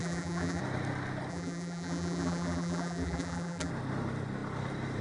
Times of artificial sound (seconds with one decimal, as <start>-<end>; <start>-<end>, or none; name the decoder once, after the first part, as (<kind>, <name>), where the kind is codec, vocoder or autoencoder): 0.0-0.6 (vocoder, BigVGAN v2); 1.3-3.7

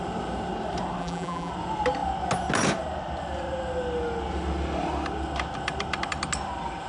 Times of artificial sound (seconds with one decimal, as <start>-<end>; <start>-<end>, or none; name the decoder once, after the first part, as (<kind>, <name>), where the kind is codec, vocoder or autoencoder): 1.0-1.5 (vocoder, BigVGAN v2)

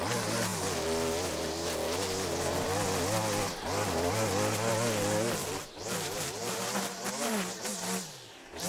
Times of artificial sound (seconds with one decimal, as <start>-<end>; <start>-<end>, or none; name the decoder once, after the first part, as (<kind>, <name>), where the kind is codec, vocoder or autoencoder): 5.4-6.6 (vocoder, BigVGAN v2)

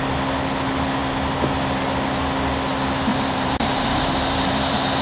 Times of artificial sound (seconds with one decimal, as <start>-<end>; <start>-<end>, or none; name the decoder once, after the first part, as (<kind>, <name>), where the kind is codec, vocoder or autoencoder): 3.1-4.4 (vocoder, BigVGAN v2)

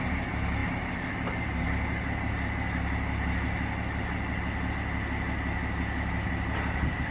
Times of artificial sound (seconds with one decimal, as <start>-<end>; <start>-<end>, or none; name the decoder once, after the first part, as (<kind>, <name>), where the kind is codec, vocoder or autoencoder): none